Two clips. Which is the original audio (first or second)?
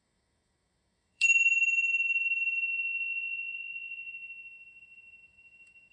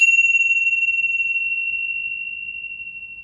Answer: second